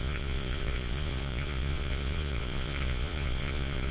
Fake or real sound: fake